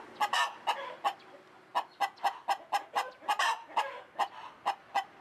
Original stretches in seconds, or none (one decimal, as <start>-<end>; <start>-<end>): 1.7-2.2